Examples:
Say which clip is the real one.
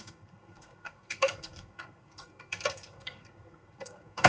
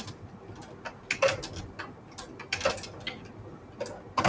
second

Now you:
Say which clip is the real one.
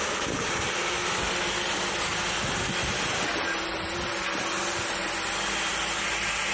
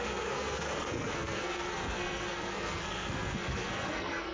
first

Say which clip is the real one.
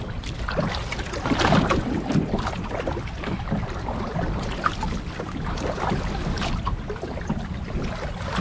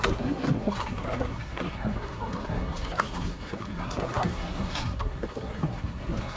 first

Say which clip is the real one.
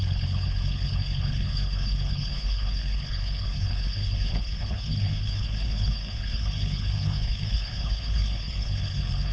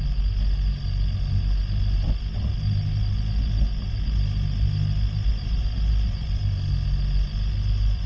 second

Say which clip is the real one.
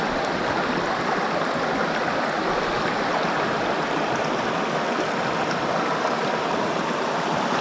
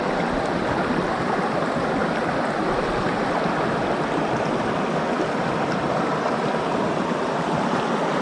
first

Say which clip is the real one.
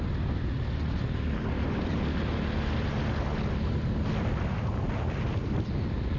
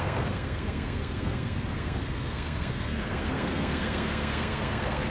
first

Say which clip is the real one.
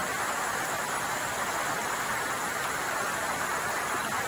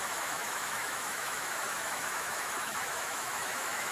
first